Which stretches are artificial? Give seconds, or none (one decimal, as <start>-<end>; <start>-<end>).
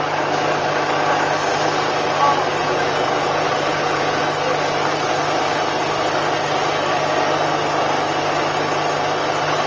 2.6-4.2